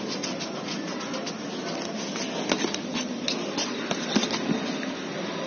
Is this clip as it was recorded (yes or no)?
yes